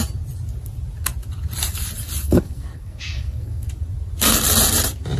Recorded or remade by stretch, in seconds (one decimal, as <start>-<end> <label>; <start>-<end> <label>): 0.0-2.2 recorded; 2.2-3.7 remade; 3.7-5.2 recorded